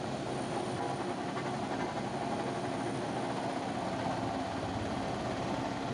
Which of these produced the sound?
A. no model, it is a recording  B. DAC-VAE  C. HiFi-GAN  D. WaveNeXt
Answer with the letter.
A